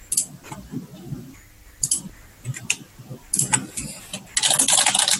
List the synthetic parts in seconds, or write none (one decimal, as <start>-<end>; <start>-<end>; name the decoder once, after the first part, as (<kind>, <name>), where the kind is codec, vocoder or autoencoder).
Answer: none